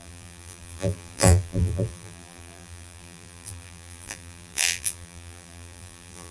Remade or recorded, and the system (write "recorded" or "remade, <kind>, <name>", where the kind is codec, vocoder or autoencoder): remade, vocoder, BigVGAN v2